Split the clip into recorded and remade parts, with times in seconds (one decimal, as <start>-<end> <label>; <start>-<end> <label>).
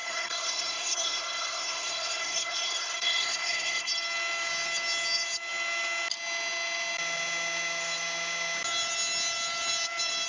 0.0-3.9 remade; 3.9-10.3 recorded